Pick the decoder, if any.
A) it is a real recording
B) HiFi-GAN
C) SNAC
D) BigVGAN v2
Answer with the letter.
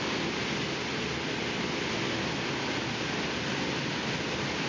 A